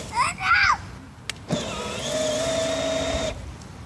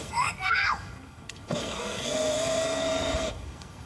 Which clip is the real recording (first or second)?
first